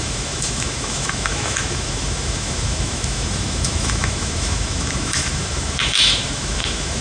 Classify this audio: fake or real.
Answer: fake